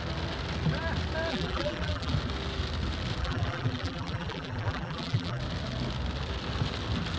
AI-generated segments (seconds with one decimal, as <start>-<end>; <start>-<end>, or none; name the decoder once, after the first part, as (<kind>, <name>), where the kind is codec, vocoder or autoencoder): 1.3-2.1 (vocoder, BigVGAN v2); 3.2-5.4